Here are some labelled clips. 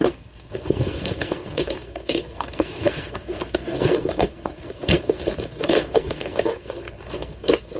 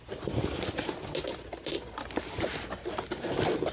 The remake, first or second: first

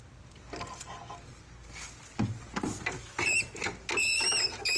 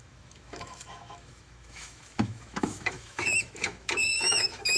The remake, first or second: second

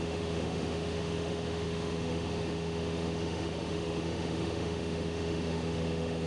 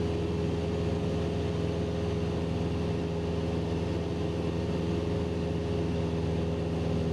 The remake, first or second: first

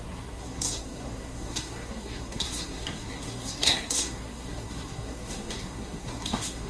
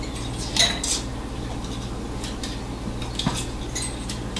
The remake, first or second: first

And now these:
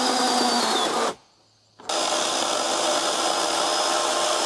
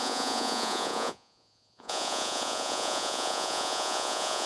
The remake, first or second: second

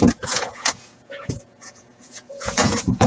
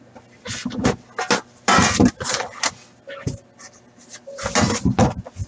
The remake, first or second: first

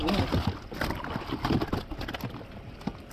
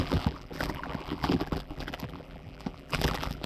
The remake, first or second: second